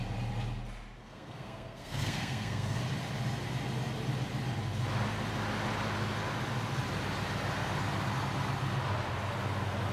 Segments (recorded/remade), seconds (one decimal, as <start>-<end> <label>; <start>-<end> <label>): 0.0-1.0 recorded; 1.0-2.8 remade; 2.8-9.9 recorded